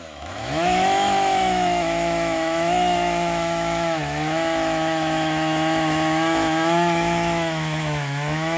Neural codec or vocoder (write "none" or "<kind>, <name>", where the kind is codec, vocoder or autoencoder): autoencoder, DAC-VAE